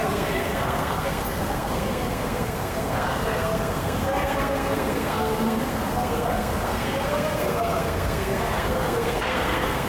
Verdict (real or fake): fake